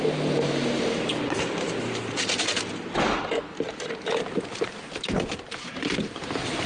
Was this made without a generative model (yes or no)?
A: yes